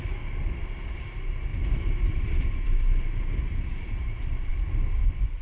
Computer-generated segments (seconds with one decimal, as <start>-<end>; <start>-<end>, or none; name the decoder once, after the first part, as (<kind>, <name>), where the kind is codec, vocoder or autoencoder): 1.5-4.5 (vocoder, BigVGAN v2)